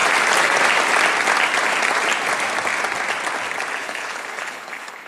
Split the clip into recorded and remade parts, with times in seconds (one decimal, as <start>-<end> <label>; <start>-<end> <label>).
0.0-3.8 recorded; 3.8-5.1 remade